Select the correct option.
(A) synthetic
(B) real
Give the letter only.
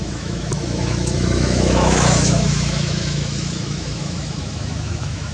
A